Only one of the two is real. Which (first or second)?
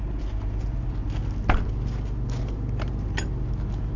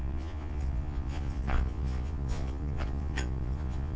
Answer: first